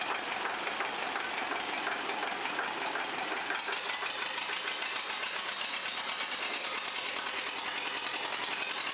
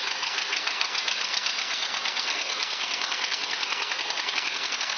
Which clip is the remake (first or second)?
second